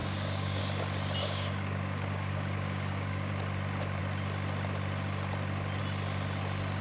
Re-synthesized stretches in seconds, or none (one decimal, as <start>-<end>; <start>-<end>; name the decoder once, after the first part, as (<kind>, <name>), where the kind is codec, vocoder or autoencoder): 0.0-0.6 (codec, DAC); 1.2-3.3